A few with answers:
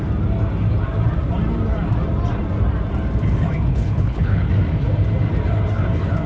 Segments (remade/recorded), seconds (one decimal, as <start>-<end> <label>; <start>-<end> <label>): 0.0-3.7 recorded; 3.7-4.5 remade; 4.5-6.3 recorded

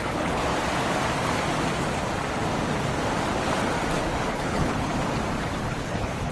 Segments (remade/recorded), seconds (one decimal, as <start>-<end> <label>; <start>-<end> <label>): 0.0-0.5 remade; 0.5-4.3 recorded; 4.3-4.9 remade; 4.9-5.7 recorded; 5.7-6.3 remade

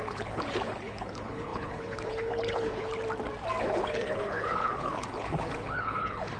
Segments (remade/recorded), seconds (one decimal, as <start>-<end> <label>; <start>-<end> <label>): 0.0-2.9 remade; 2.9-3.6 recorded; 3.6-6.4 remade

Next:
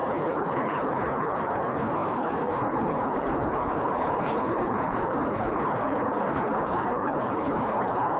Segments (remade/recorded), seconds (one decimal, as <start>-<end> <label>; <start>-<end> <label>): 0.0-8.2 remade

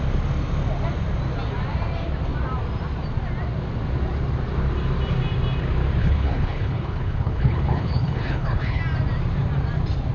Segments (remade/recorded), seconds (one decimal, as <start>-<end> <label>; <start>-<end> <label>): 0.0-6.0 recorded; 6.0-8.8 remade; 8.8-10.1 recorded